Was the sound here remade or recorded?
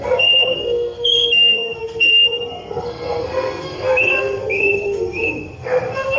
remade